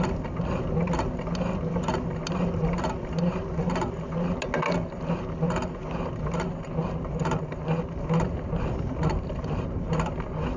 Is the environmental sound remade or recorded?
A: recorded